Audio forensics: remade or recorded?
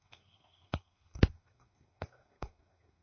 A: remade